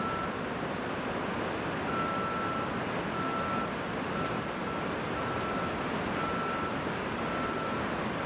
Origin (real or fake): real